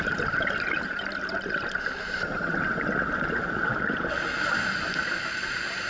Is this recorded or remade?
recorded